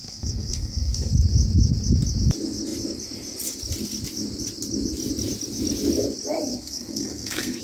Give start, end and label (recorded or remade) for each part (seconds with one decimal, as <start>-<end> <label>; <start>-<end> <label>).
0.0-1.1 remade; 1.1-6.5 recorded; 6.5-7.6 remade